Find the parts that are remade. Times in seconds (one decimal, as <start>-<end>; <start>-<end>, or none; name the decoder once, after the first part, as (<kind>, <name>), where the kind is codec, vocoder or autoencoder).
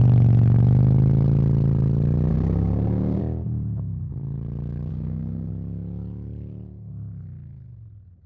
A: 2.3-3.2 (codec, SNAC); 4.9-5.5